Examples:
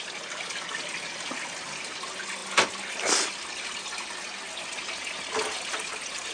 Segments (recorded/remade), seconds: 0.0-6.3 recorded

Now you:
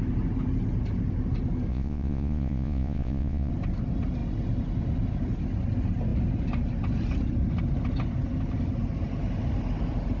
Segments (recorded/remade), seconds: 0.0-1.7 recorded; 1.7-3.5 remade; 3.5-10.2 recorded